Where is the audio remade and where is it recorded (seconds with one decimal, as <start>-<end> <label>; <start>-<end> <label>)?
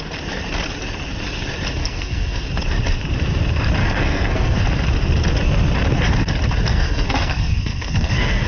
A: 0.0-1.8 recorded; 1.8-2.4 remade; 2.4-3.8 recorded; 3.8-4.6 remade; 4.6-6.7 recorded; 6.7-8.5 remade